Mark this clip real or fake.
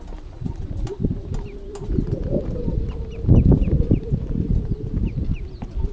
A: real